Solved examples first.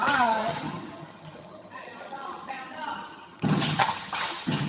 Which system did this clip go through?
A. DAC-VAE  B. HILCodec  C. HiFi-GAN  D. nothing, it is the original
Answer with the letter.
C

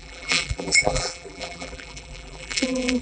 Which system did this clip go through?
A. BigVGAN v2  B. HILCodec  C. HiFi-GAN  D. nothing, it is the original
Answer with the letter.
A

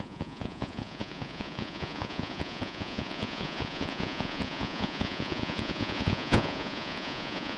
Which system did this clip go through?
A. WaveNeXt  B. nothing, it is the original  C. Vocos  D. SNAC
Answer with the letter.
C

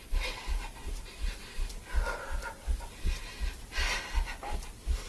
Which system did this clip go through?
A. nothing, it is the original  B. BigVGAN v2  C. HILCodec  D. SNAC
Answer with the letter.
A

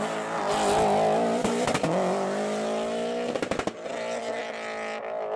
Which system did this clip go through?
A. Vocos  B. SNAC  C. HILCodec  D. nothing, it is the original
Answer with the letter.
D